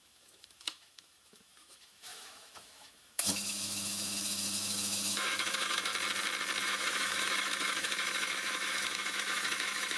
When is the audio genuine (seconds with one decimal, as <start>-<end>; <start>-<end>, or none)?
5.9-6.6